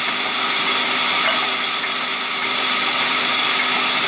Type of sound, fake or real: real